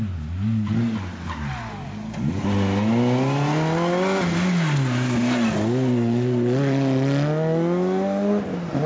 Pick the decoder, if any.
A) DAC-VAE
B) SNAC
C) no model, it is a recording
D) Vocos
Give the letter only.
C